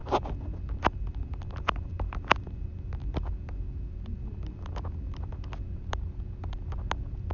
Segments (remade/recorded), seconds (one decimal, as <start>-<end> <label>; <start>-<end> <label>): 0.0-7.3 recorded